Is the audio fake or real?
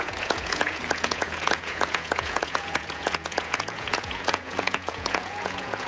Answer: fake